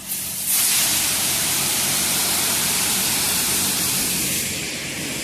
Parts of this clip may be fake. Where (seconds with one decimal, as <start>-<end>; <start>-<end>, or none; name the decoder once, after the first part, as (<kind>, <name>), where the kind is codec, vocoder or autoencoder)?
0.9-4.0 (vocoder, BigVGAN v2)